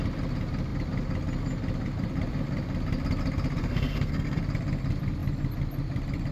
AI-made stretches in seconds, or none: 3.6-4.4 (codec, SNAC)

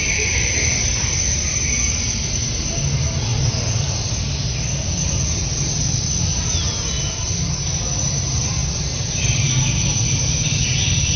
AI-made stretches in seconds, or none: none

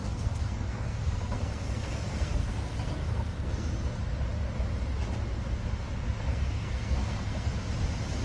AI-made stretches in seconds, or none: 0.0-3.7 (codec, SNAC); 6.3-7.5

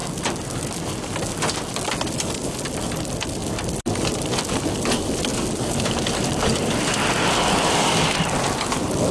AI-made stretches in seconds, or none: none

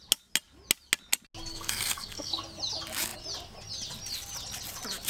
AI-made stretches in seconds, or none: 1.5-2.4 (codec, SNAC)

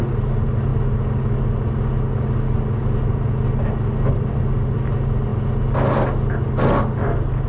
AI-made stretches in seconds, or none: none